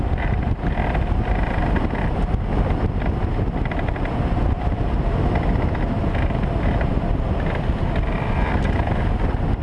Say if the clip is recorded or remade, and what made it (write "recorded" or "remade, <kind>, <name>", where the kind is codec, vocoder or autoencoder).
recorded